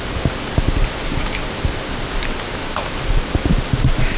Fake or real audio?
real